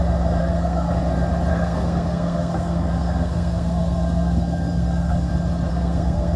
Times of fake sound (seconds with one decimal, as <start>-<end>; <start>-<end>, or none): 0.4-0.9; 1.5-5.3; 5.7-6.4